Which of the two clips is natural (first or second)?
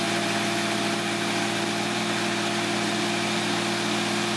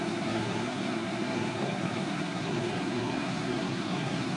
first